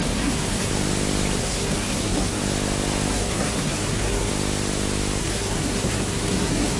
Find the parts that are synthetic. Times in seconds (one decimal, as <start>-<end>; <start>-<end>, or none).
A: 0.0-0.7; 1.4-2.4; 3.1-4.3; 5.2-6.8